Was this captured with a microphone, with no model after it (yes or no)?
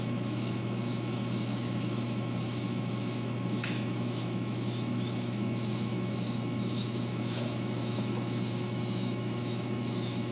no